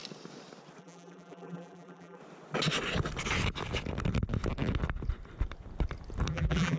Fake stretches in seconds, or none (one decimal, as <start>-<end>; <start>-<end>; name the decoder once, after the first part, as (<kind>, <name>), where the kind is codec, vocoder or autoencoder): 0.8-2.2 (vocoder, BigVGAN v2); 6.3-6.8